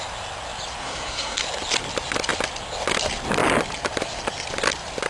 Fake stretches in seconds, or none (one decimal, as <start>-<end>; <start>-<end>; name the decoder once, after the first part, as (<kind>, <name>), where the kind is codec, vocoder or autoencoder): 0.8-1.4 (codec, SNAC)